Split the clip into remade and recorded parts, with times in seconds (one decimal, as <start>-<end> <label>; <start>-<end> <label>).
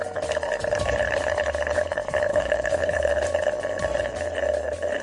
0.0-2.3 recorded; 2.3-3.1 remade; 3.1-5.0 recorded